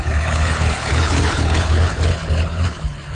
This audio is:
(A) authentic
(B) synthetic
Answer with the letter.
B